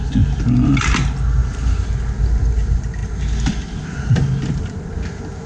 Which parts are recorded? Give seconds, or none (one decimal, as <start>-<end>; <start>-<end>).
0.0-5.5